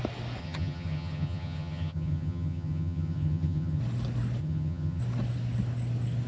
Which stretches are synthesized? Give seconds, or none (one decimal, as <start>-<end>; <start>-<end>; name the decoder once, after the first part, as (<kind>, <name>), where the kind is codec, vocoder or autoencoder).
0.4-3.8 (vocoder, HiFi-GAN); 4.4-5.0